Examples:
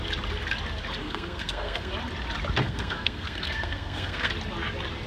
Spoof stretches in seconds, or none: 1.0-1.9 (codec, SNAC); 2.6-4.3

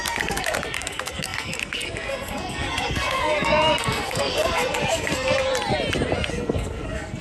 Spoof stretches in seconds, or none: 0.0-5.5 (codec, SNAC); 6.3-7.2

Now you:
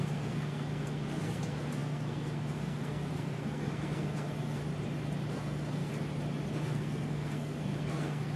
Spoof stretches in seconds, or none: 0.0-4.6 (codec, SNAC); 5.3-5.9; 6.5-8.4

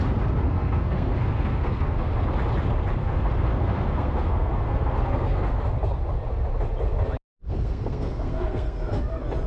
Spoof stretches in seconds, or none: 0.4-2.1 (codec, SNAC); 3.0-5.6; 7.4-9.0

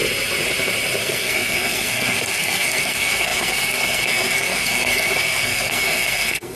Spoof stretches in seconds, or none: 1.0-6.6 (codec, SNAC)

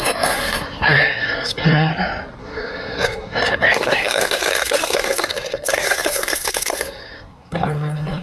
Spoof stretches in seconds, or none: 0.0-1.9 (codec, SNAC); 2.4-8.2

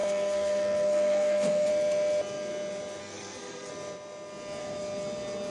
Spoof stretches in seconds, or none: 0.0-1.7 (codec, SNAC); 3.0-3.7

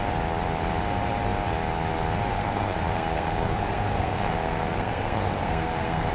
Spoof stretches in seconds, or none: 2.3-6.1 (codec, SNAC)